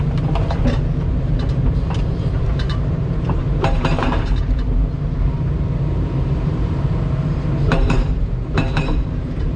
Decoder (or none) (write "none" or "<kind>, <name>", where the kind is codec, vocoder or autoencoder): vocoder, BigVGAN v2